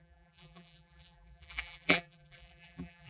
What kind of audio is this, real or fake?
fake